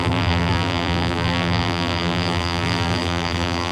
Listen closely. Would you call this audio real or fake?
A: fake